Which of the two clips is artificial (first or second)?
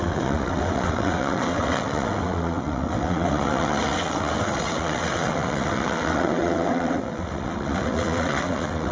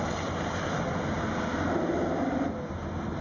first